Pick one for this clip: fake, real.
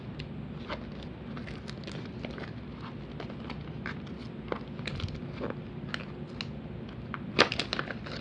real